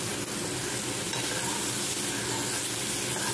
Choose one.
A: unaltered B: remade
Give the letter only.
A